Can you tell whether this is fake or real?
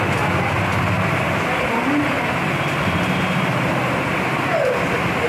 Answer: real